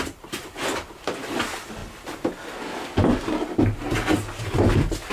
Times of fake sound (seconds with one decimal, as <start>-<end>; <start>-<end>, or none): none